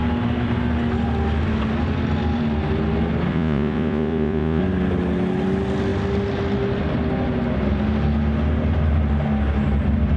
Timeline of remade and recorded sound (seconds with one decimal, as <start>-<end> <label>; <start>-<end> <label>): 0.0-3.3 recorded; 3.3-4.6 remade; 4.6-10.2 recorded